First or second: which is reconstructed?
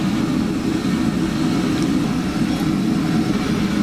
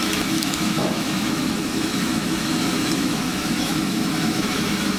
second